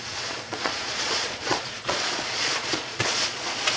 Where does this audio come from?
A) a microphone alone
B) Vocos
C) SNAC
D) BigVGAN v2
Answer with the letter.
B